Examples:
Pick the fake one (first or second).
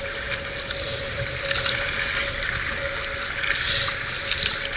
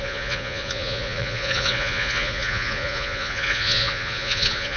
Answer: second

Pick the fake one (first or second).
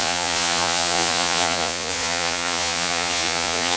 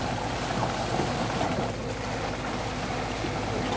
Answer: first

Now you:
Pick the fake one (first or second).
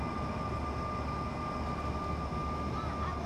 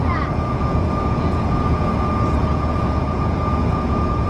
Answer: second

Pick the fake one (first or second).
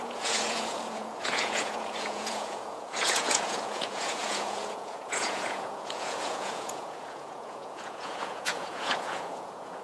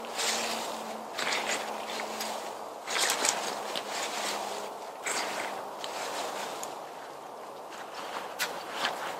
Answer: first